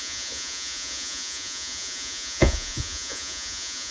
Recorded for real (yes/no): no